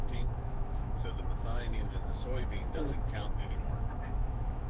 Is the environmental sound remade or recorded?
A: remade